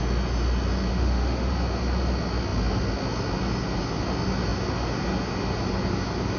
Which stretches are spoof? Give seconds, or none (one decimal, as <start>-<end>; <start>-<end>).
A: 0.9-1.5